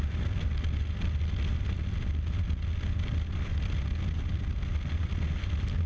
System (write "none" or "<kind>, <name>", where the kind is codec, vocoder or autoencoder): none